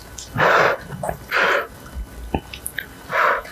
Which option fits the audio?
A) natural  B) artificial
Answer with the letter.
A